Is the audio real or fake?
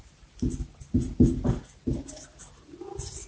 real